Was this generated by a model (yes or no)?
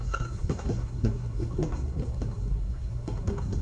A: yes